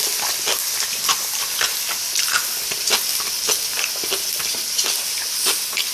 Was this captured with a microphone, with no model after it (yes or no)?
yes